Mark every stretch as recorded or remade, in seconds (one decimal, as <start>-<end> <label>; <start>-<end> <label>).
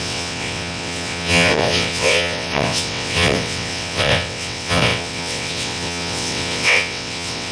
0.0-7.5 remade